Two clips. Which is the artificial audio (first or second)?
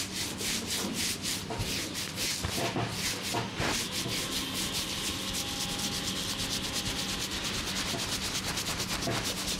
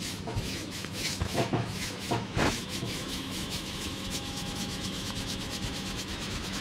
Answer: second